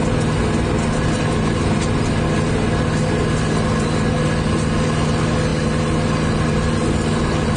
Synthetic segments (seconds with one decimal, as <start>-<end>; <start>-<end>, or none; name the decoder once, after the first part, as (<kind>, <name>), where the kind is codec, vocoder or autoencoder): none